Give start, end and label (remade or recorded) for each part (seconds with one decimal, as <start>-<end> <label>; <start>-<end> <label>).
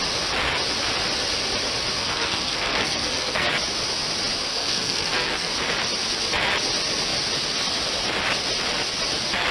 0.0-2.0 recorded; 2.0-3.5 remade; 3.5-4.5 recorded; 4.5-5.5 remade; 5.5-9.5 recorded